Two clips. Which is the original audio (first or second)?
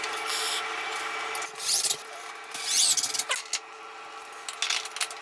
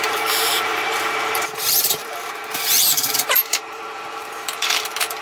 first